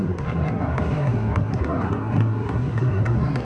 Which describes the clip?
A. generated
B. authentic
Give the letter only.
A